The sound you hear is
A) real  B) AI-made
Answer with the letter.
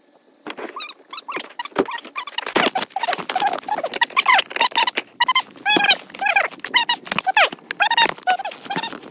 A